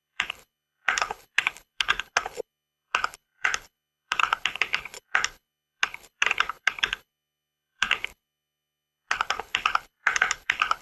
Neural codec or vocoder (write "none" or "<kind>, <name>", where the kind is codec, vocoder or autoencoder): codec, HILCodec